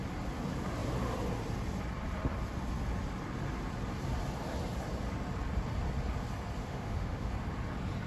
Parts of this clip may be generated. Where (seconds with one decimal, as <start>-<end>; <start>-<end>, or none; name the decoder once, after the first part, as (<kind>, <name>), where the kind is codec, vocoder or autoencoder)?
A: 6.6-7.3 (autoencoder, DAC-VAE)